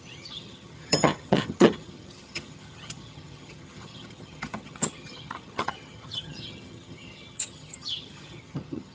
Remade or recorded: remade